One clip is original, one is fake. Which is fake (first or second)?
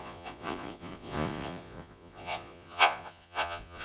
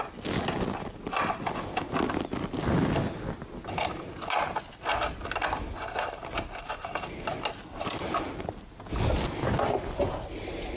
first